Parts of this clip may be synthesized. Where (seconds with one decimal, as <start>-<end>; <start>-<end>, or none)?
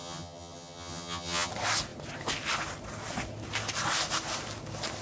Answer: 0.0-1.5